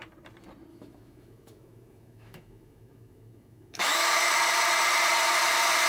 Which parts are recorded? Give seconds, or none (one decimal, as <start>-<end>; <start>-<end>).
0.0-0.7; 4.2-5.9